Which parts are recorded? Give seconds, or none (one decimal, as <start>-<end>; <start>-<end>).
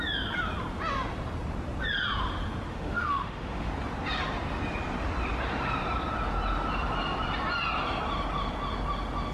0.0-2.7; 3.7-9.3